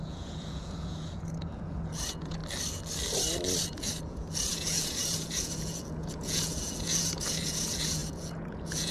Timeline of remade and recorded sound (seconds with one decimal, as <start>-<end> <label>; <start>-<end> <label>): 0.0-2.4 remade; 2.4-3.6 recorded; 3.6-8.9 remade